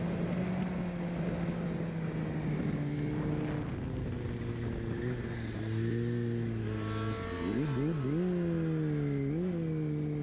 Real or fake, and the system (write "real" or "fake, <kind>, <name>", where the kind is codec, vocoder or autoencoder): real